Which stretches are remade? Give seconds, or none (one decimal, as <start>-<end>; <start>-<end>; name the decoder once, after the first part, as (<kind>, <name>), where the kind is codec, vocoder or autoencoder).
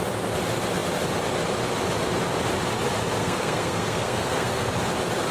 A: 3.2-4.7 (codec, SNAC)